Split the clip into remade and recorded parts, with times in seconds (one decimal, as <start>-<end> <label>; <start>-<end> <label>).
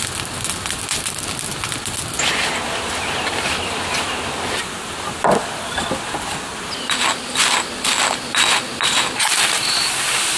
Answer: 0.0-10.4 recorded